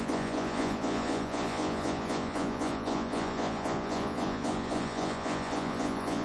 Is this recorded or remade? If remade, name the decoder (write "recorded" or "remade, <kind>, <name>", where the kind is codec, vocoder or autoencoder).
remade, vocoder, Vocos